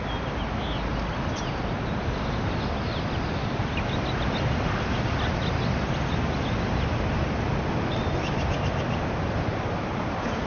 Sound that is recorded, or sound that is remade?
recorded